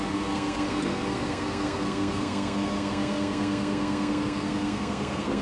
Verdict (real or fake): fake